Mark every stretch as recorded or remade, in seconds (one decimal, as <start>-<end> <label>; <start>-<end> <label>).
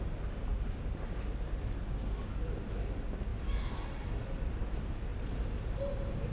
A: 0.0-3.3 recorded; 3.3-4.0 remade; 4.0-6.3 recorded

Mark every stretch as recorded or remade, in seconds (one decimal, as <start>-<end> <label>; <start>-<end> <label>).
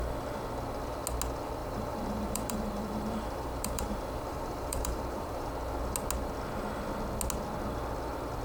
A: 0.0-1.6 recorded; 1.6-5.5 remade; 5.5-8.4 recorded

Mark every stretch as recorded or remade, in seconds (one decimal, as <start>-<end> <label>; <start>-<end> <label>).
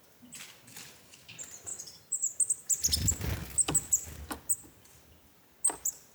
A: 0.0-1.7 recorded; 1.7-2.3 remade; 2.3-6.1 recorded